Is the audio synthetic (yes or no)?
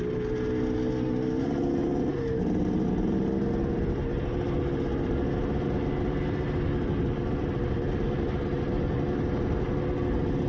no